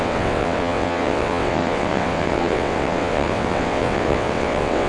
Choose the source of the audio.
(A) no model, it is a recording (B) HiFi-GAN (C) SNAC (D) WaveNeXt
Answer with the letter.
D